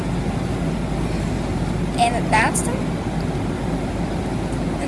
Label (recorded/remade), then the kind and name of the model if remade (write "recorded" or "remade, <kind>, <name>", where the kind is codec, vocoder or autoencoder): recorded